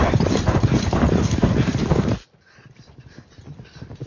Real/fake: real